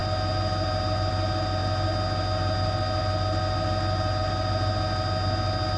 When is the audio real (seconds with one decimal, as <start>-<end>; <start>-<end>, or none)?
0.0-5.8